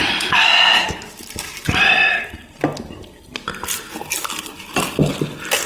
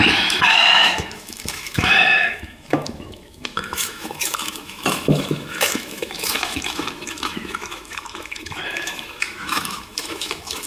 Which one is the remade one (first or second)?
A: second